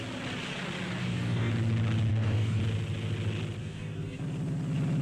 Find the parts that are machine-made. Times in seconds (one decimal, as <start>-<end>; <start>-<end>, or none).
1.0-1.5; 2.1-2.6; 3.6-4.2